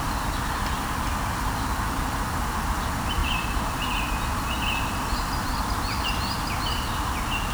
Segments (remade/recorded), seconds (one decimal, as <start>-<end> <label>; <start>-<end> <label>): 0.0-3.2 recorded; 3.2-3.9 remade; 3.9-7.5 recorded